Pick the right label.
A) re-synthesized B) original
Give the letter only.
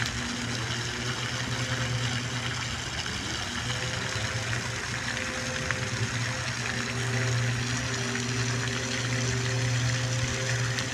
B